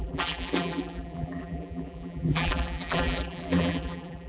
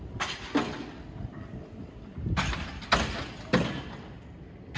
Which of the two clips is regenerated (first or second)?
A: first